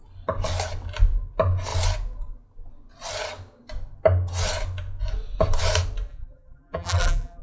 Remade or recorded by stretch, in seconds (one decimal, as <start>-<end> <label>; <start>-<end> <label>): 0.0-6.1 recorded; 6.1-7.4 remade